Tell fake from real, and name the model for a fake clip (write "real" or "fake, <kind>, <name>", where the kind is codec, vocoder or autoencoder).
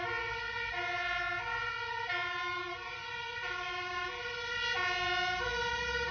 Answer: real